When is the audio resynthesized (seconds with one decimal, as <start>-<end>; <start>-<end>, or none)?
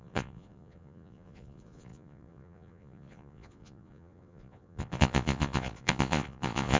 0.0-6.8